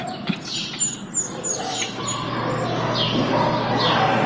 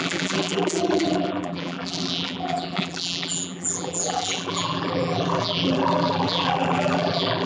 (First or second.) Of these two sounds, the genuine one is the first